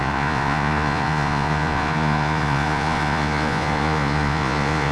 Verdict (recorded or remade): remade